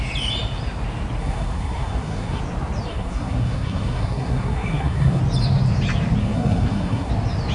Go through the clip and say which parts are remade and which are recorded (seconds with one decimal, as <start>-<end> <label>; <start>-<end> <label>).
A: 0.0-1.2 recorded; 1.2-2.4 remade; 2.4-2.9 recorded; 2.9-5.2 remade; 5.2-6.2 recorded; 6.2-7.1 remade; 7.1-7.5 recorded

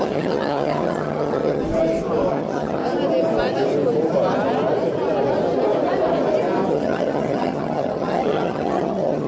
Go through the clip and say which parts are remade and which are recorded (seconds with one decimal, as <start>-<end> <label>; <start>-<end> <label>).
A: 0.0-1.6 remade; 1.6-2.3 recorded; 2.3-2.8 remade; 2.8-6.7 recorded; 6.7-9.3 remade

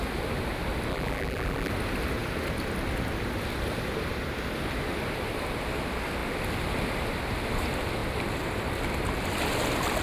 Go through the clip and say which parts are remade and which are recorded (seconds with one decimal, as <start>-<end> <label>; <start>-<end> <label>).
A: 0.0-0.9 recorded; 0.9-1.7 remade; 1.7-10.0 recorded

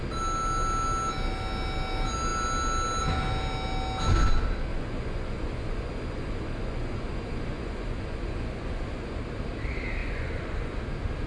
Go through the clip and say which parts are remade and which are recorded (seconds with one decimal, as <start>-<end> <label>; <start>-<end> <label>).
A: 0.0-4.7 recorded; 4.7-9.2 remade; 9.2-10.0 recorded; 10.0-10.8 remade; 10.8-11.3 recorded

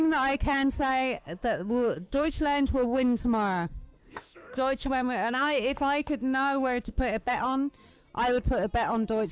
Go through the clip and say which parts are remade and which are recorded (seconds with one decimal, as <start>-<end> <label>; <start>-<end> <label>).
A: 0.0-0.9 recorded; 0.9-3.2 remade; 3.2-4.0 recorded; 4.0-7.3 remade; 7.3-9.3 recorded

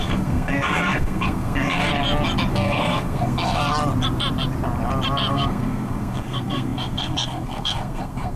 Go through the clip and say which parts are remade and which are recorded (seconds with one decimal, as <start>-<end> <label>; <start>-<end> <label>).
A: 0.0-1.9 remade; 1.9-2.5 recorded; 2.5-3.6 remade; 3.6-5.3 recorded; 5.3-8.4 remade

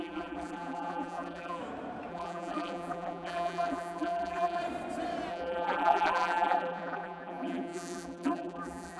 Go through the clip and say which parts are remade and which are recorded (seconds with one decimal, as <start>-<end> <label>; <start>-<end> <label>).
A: 0.0-1.6 remade; 1.6-2.1 recorded; 2.1-4.6 remade; 4.6-5.3 recorded; 5.3-9.0 remade